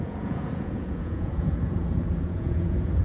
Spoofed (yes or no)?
yes